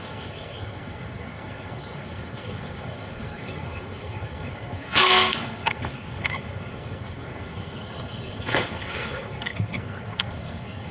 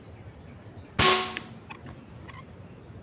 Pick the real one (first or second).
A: second